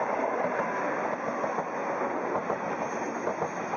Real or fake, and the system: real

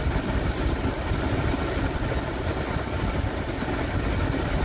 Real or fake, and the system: real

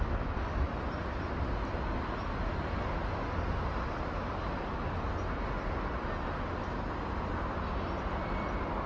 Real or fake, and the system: real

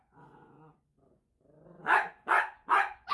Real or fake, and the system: fake, vocoder, Vocos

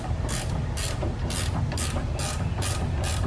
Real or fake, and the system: real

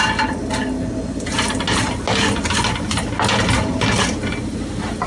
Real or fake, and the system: real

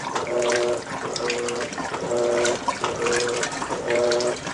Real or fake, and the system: fake, vocoder, BigVGAN v2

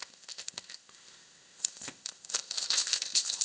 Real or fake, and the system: fake, codec, ZipCodec